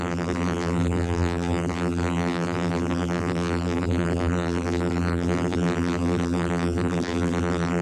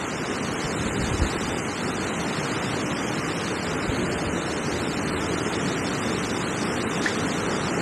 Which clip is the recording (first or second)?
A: second